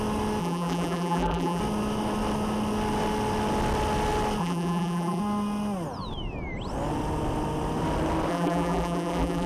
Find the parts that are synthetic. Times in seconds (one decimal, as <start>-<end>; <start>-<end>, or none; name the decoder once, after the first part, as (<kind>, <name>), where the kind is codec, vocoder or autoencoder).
0.4-1.6 (vocoder, BigVGAN v2); 4.4-5.2; 8.3-9.5